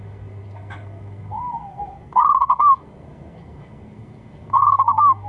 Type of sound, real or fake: fake